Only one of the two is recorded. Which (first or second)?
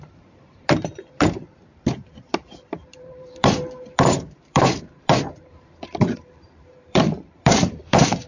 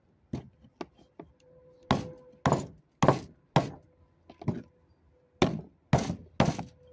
second